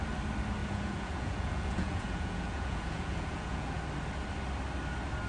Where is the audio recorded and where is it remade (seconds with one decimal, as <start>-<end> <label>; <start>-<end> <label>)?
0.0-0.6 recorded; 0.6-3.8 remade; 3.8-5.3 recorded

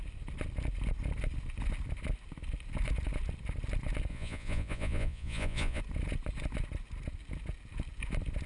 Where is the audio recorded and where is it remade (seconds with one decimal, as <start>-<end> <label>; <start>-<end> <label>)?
0.0-4.1 recorded; 4.1-5.8 remade; 5.8-8.5 recorded

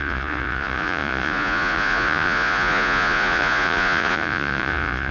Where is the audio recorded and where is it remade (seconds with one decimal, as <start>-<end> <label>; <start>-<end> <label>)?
0.0-5.1 remade